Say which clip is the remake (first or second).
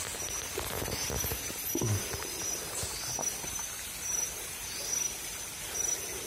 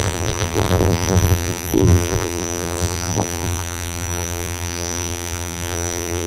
second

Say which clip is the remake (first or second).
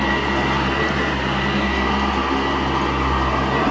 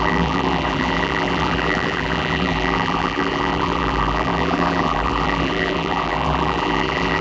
second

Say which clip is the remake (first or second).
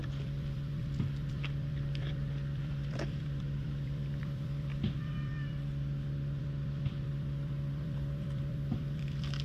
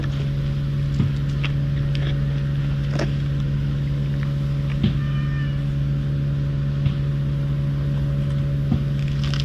first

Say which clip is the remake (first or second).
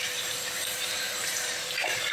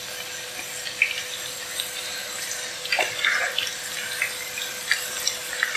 first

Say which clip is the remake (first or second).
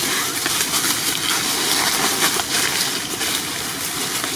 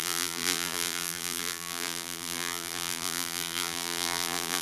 second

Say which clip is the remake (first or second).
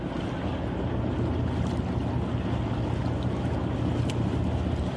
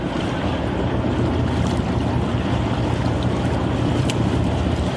second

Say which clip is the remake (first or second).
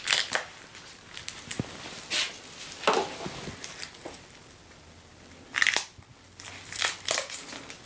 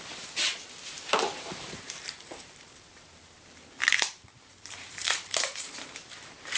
second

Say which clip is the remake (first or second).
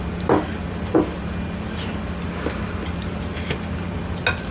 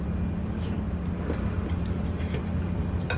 second